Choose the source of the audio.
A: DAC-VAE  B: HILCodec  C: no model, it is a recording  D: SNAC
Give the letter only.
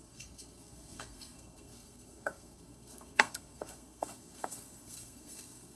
D